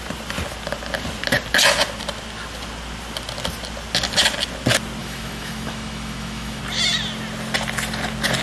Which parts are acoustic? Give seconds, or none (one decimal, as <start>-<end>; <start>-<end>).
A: 0.0-5.0; 6.6-8.4